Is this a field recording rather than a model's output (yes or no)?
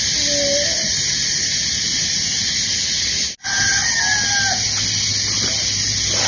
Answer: yes